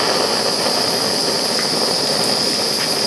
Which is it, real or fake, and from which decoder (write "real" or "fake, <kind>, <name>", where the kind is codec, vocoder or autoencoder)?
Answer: real